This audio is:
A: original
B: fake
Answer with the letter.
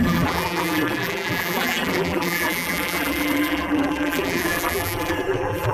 B